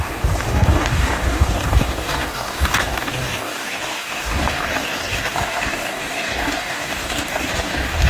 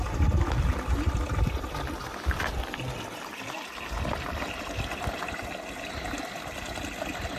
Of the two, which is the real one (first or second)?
second